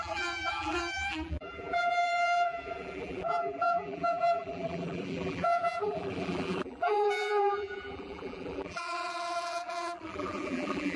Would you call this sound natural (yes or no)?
no